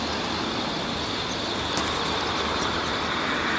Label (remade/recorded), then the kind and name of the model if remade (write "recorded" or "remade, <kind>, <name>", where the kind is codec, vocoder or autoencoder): recorded